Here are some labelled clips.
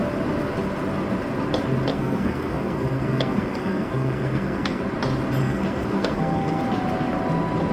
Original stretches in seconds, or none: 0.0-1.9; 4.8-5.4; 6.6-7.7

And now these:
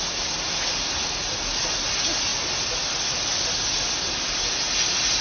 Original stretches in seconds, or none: 0.0-5.2

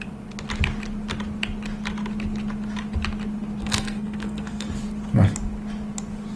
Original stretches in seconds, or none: 0.0-3.6; 4.7-6.4